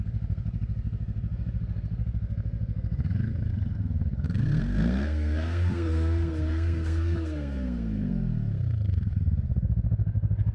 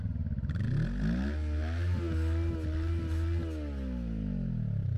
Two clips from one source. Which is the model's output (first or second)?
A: first